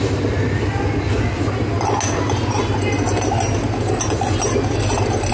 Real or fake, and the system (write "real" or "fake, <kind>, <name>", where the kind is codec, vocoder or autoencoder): real